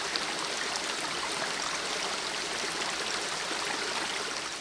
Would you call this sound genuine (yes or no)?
yes